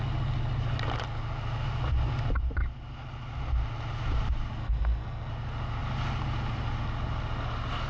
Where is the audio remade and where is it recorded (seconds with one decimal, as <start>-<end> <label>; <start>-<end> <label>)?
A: 0.0-4.6 recorded; 4.6-5.3 remade; 5.3-7.9 recorded